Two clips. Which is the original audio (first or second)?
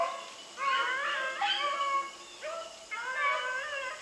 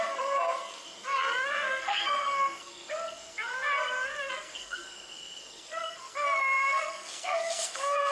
first